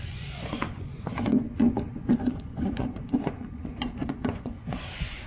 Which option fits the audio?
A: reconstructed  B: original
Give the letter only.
A